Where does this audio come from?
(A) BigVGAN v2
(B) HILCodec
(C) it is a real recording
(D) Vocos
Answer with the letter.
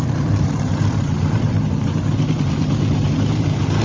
A